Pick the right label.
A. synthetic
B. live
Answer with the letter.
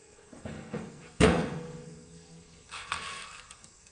A